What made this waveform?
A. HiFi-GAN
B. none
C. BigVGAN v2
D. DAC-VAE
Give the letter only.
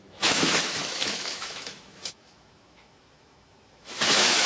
D